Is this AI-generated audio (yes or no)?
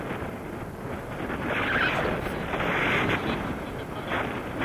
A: no